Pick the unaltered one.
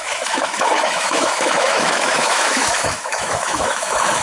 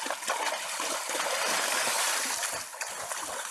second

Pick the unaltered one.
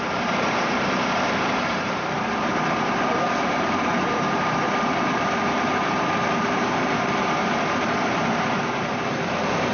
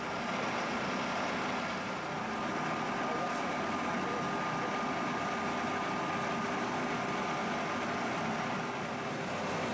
second